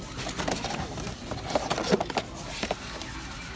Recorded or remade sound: recorded